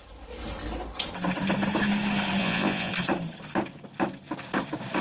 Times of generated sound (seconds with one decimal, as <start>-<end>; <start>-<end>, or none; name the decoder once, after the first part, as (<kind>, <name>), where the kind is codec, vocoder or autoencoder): 2.4-2.9 (vocoder, Vocos)